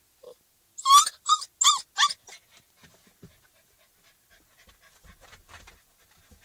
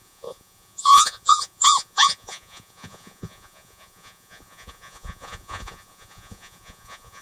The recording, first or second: first